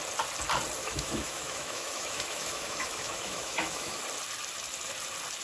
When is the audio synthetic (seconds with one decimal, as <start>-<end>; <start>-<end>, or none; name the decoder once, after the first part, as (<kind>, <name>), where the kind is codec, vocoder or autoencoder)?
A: 0.8-4.0 (autoencoder, DAC-VAE)